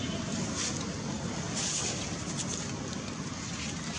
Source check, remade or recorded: recorded